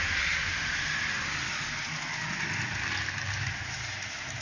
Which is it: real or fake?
real